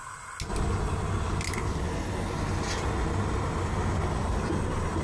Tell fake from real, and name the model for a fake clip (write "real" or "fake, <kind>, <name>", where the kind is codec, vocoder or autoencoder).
real